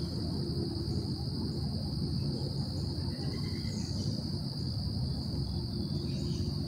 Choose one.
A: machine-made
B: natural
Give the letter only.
B